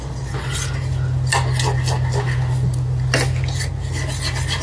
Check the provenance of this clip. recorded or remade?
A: recorded